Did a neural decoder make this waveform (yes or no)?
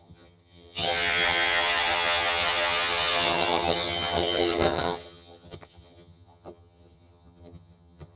yes